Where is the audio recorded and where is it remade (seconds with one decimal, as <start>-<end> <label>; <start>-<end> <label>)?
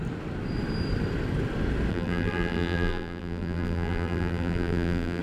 0.0-1.9 recorded; 1.9-5.2 remade